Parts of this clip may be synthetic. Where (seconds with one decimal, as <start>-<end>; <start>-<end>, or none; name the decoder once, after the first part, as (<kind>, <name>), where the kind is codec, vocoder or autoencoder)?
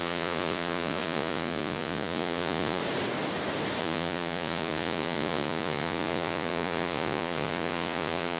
0.0-2.8 (vocoder, Vocos); 3.8-8.4